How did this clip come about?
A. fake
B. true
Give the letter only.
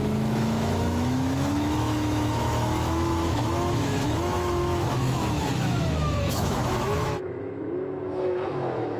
A